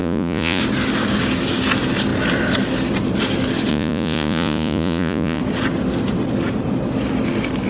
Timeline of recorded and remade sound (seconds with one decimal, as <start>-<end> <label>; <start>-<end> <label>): 0.0-0.6 remade; 0.6-3.7 recorded; 3.7-5.4 remade; 5.4-7.7 recorded